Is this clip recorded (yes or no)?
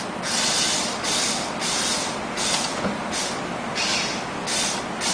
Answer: yes